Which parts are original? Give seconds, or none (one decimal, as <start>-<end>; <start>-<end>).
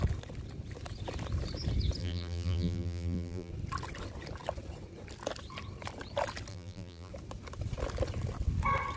0.0-2.0; 3.5-6.5; 7.1-9.0